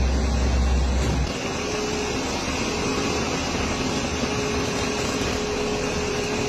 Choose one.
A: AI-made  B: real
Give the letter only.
B